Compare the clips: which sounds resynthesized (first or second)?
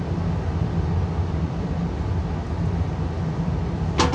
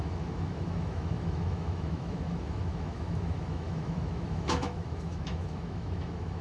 second